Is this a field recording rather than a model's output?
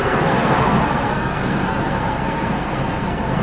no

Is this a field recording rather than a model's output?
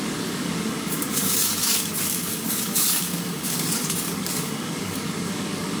no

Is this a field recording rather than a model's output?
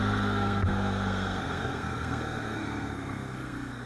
no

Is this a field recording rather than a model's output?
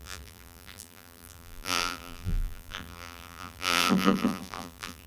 no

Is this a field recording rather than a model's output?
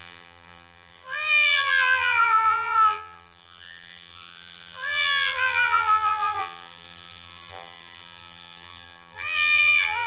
no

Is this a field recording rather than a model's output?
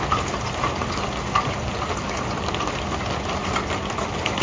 yes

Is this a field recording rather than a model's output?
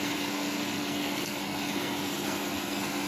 no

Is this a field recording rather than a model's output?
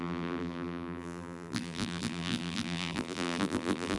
no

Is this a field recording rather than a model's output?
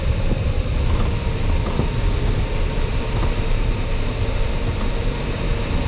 yes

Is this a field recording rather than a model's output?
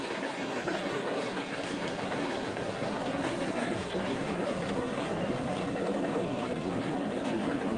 no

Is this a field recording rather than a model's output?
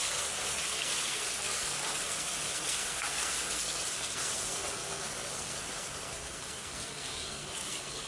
no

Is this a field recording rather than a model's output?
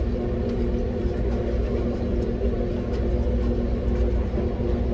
yes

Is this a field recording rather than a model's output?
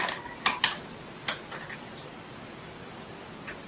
yes